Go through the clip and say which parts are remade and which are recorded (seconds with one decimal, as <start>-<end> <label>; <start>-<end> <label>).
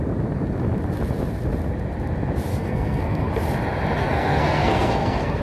0.0-2.5 recorded; 2.5-3.3 remade; 3.3-4.0 recorded; 4.0-5.4 remade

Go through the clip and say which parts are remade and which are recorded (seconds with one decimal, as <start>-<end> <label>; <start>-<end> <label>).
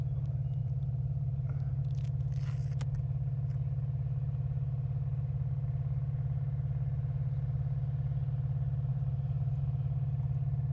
0.0-0.6 recorded; 0.6-1.8 remade; 1.8-8.9 recorded; 8.9-9.6 remade; 9.6-10.7 recorded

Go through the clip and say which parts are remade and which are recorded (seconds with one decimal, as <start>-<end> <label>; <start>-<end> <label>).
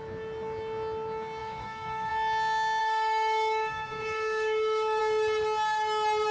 0.0-1.4 recorded; 1.4-2.1 remade; 2.1-2.8 recorded; 2.8-5.0 remade; 5.0-6.3 recorded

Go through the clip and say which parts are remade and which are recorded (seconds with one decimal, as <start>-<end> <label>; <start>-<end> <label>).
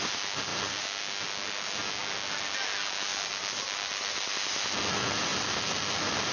0.0-6.3 recorded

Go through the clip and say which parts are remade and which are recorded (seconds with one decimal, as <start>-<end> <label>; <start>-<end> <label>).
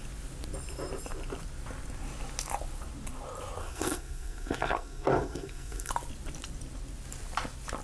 0.0-3.6 recorded; 3.6-5.9 remade; 5.9-7.8 recorded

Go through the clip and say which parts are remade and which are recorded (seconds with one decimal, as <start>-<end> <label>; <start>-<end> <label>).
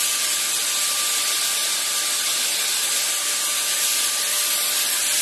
0.0-5.2 recorded